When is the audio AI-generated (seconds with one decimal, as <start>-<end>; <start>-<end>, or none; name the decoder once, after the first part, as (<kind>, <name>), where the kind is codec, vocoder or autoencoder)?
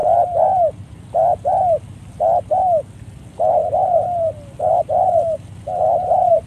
none